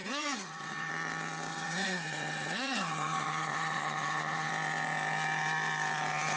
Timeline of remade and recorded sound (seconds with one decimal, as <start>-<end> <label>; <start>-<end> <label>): 0.0-0.9 remade; 0.9-1.5 recorded; 1.5-4.5 remade; 4.5-6.4 recorded